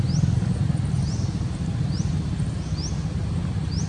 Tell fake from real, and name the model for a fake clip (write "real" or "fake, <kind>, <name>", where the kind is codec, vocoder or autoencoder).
real